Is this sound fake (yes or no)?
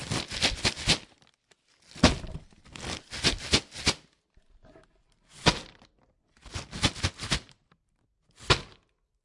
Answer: no